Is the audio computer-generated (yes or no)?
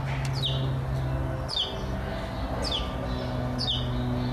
no